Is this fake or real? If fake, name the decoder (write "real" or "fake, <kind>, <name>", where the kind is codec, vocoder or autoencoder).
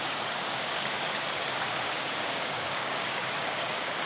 fake, codec, DAC